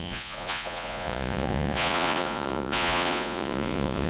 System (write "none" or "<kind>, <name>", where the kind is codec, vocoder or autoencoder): vocoder, Vocos